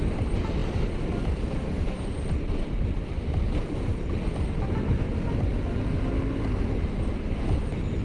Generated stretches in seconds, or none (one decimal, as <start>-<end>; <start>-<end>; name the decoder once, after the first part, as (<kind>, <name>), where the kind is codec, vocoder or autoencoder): none

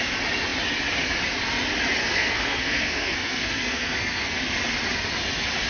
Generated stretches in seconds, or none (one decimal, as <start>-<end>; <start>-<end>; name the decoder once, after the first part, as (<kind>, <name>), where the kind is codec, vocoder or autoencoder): 2.0-4.4 (codec, SNAC)